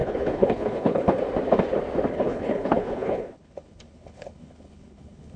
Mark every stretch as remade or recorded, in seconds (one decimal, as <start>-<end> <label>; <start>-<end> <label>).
0.0-1.2 remade; 1.2-2.1 recorded; 2.1-5.4 remade